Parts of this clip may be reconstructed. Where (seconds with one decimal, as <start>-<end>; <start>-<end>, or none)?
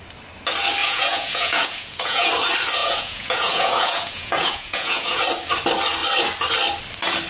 0.8-2.3; 2.8-5.2